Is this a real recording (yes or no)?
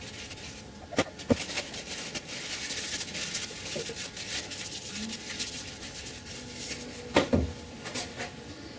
yes